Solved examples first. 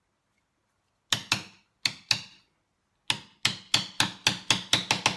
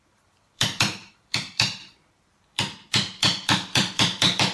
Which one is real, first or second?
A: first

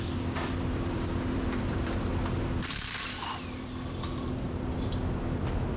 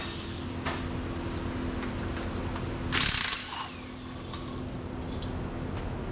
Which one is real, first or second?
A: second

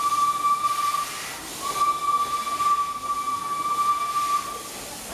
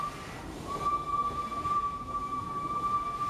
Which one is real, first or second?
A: first